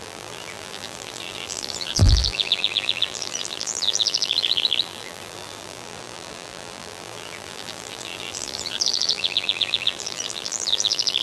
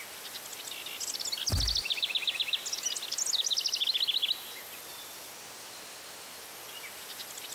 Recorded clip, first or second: second